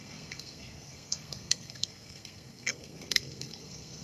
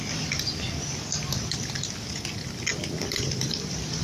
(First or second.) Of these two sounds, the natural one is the second